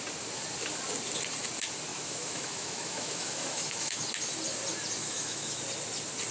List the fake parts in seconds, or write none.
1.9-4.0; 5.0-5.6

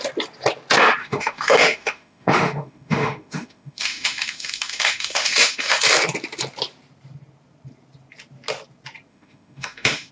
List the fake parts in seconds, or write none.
1.0-5.8; 9.1-10.1

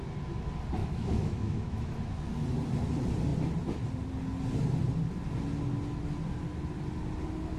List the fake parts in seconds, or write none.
0.8-2.0

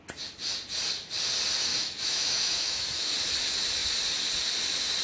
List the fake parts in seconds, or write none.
1.7-3.1